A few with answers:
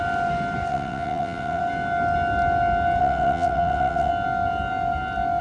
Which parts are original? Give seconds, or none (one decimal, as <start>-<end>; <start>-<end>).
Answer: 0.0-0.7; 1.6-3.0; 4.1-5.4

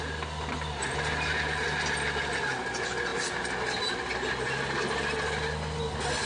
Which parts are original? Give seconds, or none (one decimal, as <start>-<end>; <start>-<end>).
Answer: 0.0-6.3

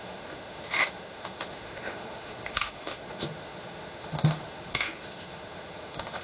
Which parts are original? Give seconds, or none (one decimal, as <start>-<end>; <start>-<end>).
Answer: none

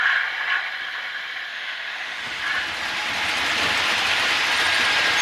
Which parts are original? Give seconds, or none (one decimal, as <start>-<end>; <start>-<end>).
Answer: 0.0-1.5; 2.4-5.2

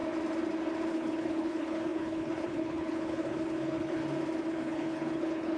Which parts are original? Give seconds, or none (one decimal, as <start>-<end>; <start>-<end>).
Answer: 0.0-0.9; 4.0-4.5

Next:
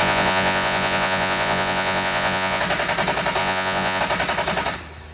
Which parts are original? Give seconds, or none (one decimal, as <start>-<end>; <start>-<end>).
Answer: 2.6-3.4; 4.0-5.1

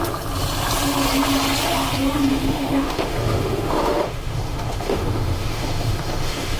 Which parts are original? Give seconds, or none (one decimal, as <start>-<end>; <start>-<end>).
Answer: 0.0-2.3